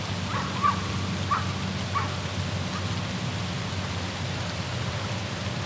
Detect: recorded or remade recorded